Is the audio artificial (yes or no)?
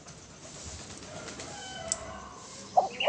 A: no